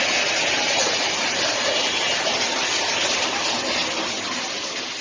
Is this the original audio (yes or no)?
yes